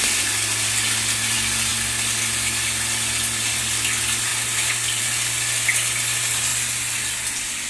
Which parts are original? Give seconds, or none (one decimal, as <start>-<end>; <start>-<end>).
0.0-7.7